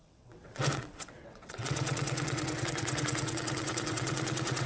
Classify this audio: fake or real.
fake